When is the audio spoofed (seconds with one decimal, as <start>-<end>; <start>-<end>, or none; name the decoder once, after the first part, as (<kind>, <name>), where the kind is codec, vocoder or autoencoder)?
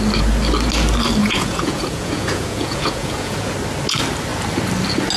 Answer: 1.2-3.5 (vocoder, Vocos)